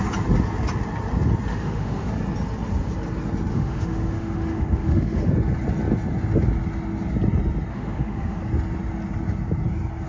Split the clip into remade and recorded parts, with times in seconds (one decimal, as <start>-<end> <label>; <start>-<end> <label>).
0.0-1.5 recorded; 1.5-2.1 remade; 2.1-3.5 recorded; 3.5-5.3 remade; 5.3-7.7 recorded; 7.7-8.4 remade; 8.4-10.1 recorded